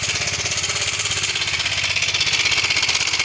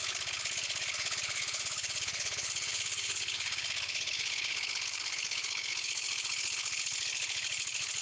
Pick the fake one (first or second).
second